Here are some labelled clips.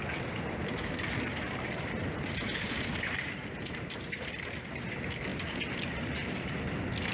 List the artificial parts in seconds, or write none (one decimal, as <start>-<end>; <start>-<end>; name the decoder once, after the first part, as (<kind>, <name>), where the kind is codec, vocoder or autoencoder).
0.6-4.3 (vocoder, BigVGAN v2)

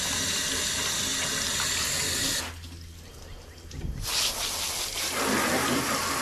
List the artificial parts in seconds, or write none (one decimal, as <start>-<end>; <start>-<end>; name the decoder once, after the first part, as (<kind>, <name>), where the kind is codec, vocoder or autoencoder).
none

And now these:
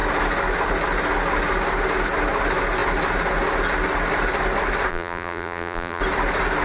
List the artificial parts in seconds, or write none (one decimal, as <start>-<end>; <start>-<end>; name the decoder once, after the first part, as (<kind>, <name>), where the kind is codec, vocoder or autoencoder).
4.9-6.0 (vocoder, BigVGAN v2)

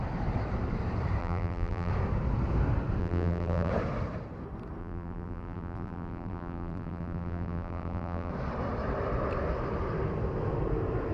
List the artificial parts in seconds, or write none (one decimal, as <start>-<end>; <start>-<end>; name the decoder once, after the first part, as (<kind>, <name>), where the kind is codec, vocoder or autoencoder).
1.2-1.9 (vocoder, BigVGAN v2); 3.0-3.7; 4.8-8.3